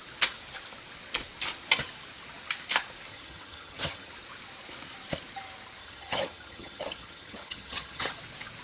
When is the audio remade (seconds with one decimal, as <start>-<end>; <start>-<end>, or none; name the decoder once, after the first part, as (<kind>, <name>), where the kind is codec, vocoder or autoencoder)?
3.1-4.1 (vocoder, HiFi-GAN); 5.8-8.2